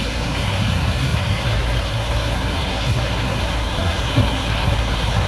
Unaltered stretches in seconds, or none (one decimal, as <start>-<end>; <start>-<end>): none